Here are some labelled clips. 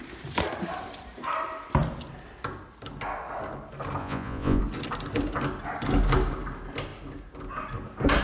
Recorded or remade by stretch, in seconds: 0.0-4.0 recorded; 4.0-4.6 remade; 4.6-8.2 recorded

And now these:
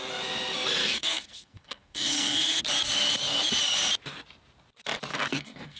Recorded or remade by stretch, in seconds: 0.0-0.8 recorded; 0.8-2.6 remade; 2.6-5.1 recorded; 5.1-5.8 remade